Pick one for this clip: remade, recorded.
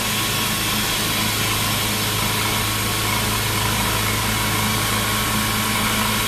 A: recorded